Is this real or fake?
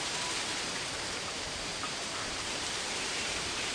fake